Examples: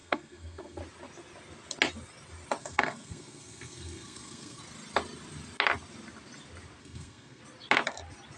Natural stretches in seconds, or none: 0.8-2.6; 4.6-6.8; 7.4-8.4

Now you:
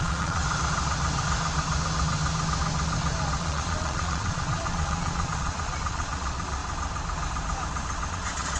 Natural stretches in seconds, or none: 0.4-3.4; 6.6-8.1

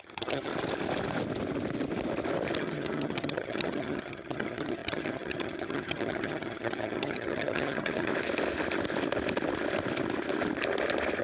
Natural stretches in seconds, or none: 0.5-2.6; 8.1-11.2

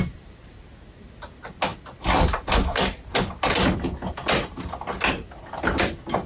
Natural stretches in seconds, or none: 0.0-6.3

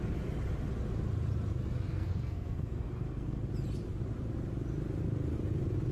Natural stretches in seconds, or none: 0.0-1.9; 3.4-5.9

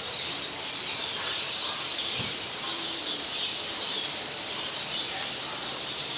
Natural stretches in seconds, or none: none

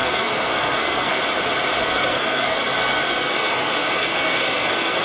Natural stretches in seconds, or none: 1.2-1.8